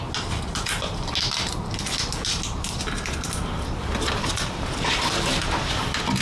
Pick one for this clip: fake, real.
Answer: real